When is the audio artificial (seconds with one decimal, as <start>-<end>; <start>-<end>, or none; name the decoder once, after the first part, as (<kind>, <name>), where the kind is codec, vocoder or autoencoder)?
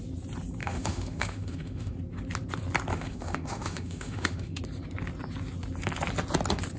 0.6-1.9 (autoencoder, DAC-VAE); 2.9-4.6